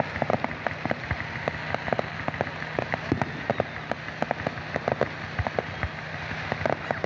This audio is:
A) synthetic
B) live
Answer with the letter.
B